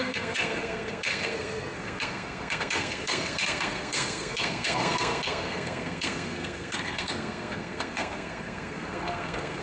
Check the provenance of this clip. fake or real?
fake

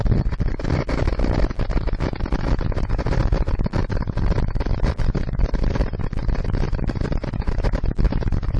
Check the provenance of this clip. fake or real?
real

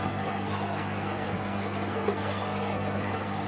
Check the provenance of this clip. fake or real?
fake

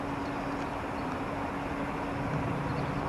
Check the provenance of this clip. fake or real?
real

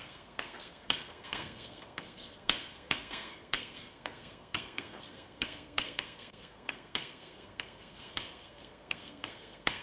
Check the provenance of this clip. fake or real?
fake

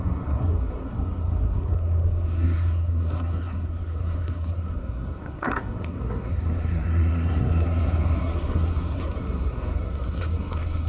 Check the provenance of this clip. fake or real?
fake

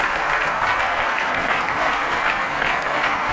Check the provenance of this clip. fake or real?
fake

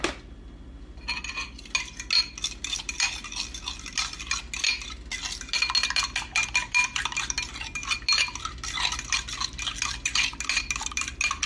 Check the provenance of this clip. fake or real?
real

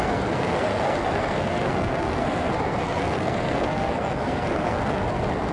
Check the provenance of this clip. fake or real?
fake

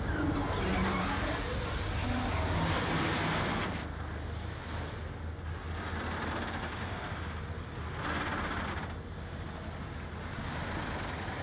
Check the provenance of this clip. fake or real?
real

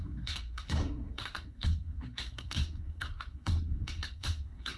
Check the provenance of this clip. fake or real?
fake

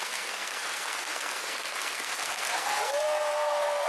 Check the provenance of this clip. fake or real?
fake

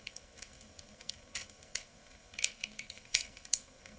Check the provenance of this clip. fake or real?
fake